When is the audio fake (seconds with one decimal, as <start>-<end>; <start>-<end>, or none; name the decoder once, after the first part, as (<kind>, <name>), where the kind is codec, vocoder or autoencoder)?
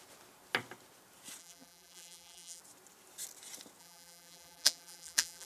1.4-2.6 (vocoder, BigVGAN v2); 3.8-5.5